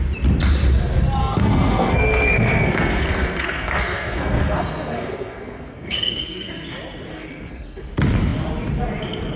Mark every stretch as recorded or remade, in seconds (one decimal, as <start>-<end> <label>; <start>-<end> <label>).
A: 0.0-1.2 recorded; 1.2-6.5 remade; 6.5-7.1 recorded; 7.1-7.9 remade; 7.9-9.4 recorded